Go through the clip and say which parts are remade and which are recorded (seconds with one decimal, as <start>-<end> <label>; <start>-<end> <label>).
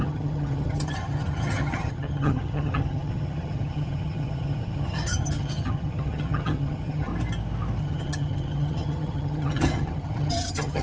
0.0-7.1 remade; 7.1-7.8 recorded; 7.8-10.8 remade